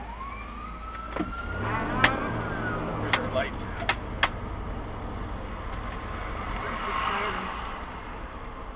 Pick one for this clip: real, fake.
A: real